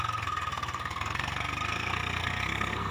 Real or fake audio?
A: fake